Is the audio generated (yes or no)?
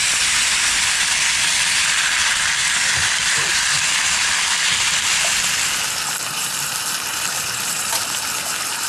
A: no